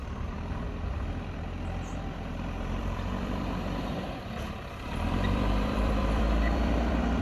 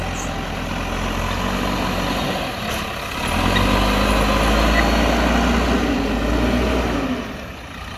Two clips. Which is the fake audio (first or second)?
first